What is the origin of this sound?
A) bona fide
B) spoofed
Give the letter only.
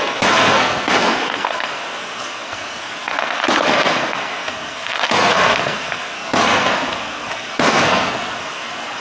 B